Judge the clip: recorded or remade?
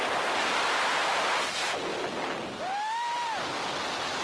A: recorded